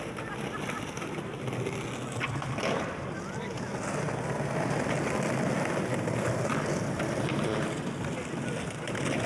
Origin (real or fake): real